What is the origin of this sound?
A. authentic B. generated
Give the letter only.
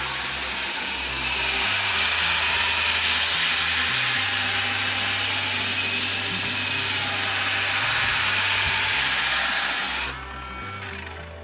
A